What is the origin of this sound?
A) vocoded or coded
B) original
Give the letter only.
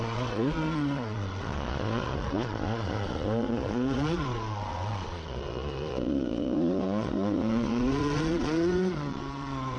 A